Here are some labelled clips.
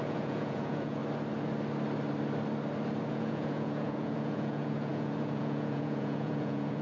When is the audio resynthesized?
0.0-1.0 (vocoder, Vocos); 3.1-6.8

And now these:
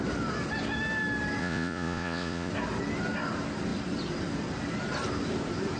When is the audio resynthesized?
1.4-2.5 (vocoder, Vocos)

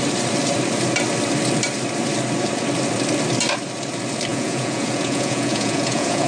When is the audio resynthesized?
4.3-6.3 (vocoder, Vocos)

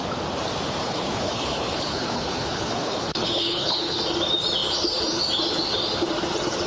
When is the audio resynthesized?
0.8-4.0 (codec, HILCodec)

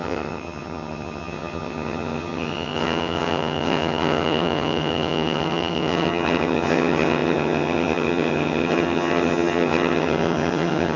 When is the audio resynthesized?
0.0-11.0 (vocoder, HiFi-GAN)

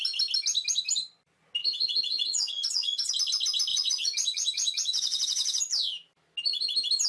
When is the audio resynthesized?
1.6-3.1 (vocoder, Vocos); 3.7-5.6

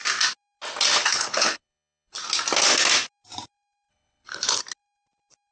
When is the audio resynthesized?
1.0-2.2 (codec, HILCodec); 3.9-4.6